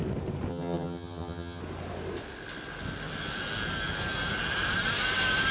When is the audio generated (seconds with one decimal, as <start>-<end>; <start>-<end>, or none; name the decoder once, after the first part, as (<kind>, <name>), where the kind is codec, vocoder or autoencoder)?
0.5-1.6 (vocoder, HiFi-GAN)

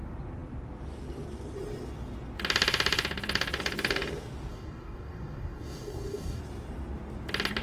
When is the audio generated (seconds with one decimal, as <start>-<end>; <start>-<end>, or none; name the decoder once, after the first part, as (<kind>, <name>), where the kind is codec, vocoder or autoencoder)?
4.5-6.4 (codec, DAC)

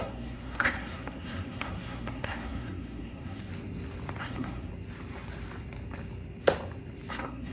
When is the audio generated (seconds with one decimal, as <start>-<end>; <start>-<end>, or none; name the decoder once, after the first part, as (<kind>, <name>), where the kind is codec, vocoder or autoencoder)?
0.0-3.5 (codec, SNAC); 4.2-4.7; 7.1-7.5

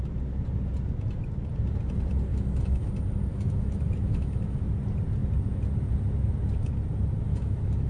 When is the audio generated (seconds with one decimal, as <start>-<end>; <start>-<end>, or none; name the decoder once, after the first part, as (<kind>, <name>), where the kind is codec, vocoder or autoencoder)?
2.3-2.9 (autoencoder, DAC-VAE); 3.3-4.6; 7.3-7.9

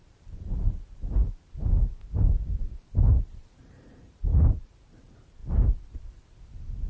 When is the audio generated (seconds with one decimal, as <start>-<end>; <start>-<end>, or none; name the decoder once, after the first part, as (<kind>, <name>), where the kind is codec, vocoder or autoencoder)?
0.0-1.2 (vocoder, BigVGAN v2); 2.6-5.4; 6.5-6.9